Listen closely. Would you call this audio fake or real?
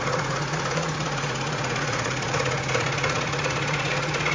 fake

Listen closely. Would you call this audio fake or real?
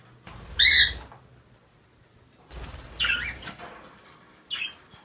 real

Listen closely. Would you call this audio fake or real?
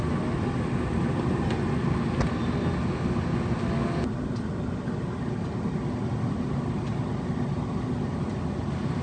real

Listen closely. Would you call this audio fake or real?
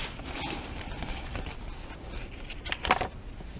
real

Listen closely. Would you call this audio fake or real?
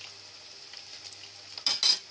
real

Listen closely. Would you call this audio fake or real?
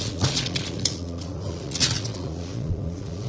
fake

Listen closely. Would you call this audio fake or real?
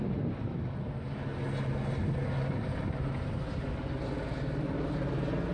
real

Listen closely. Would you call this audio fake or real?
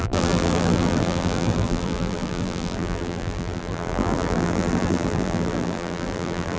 fake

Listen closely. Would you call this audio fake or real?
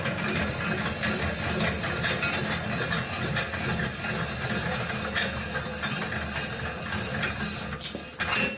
real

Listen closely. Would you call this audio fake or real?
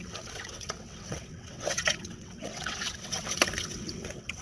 fake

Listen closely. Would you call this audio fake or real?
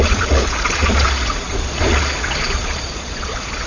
fake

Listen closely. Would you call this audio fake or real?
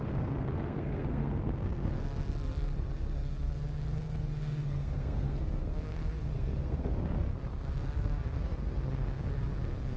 fake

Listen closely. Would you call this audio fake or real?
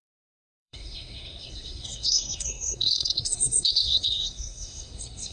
fake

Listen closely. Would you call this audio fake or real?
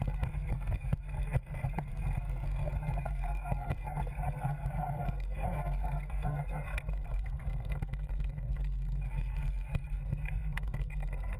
fake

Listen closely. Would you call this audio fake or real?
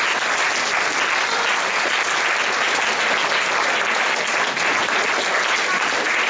real